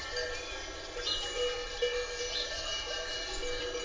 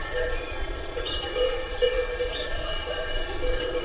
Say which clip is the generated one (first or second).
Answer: second